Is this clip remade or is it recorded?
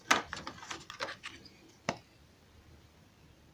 recorded